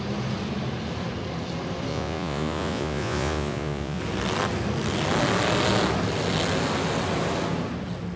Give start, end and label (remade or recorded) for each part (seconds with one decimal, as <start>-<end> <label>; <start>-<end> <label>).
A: 0.0-1.9 recorded; 1.9-4.0 remade; 4.0-8.2 recorded